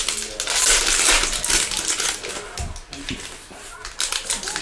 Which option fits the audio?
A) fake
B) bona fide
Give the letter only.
B